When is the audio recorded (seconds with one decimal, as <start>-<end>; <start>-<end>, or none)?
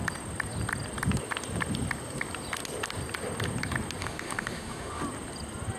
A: 0.0-4.0; 5.0-5.8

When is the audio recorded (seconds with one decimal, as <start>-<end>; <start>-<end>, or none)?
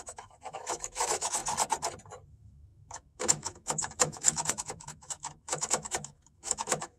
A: 1.4-2.3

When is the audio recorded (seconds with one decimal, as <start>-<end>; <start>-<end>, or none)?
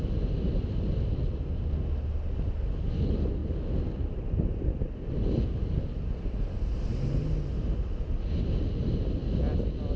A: 0.0-10.0